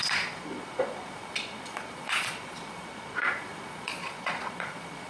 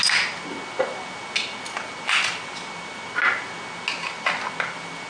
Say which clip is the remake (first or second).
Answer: first